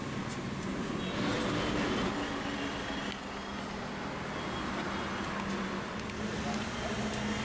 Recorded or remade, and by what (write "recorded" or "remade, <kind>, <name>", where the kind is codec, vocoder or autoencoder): recorded